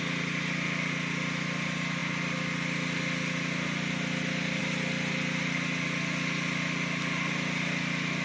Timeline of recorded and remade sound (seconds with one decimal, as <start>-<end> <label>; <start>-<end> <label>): 0.0-8.2 recorded